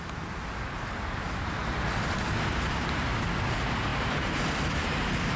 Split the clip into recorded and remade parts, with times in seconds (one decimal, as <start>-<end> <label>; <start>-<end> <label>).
0.0-3.9 recorded; 3.9-4.9 remade; 4.9-5.4 recorded

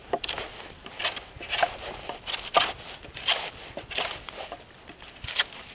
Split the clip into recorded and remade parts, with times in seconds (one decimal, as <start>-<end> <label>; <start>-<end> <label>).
0.0-5.7 recorded

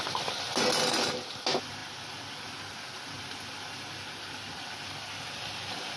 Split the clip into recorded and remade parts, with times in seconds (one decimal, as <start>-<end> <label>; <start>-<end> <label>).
0.0-6.0 recorded

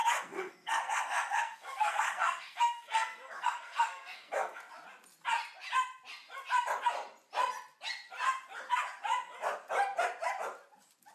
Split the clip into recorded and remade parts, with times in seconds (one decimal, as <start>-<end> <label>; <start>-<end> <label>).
0.0-4.6 remade; 4.6-11.1 recorded

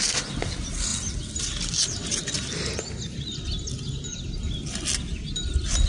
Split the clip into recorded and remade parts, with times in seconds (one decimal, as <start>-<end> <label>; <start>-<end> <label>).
0.0-5.9 recorded

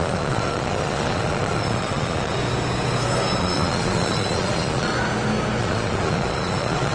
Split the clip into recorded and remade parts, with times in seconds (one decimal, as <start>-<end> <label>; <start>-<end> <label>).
0.0-2.4 remade; 2.4-3.4 recorded; 3.4-4.9 remade; 4.9-5.6 recorded; 5.6-6.9 remade

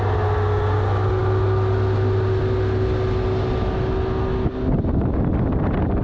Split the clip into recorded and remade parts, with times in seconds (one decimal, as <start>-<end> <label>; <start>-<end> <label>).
0.0-6.0 recorded